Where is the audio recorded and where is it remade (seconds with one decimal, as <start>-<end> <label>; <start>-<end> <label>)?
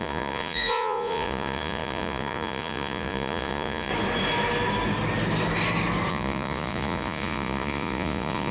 0.0-3.9 remade; 3.9-6.1 recorded; 6.1-8.5 remade